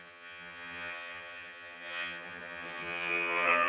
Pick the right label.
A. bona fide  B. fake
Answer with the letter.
B